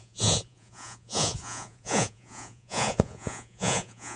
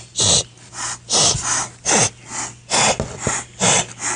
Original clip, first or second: second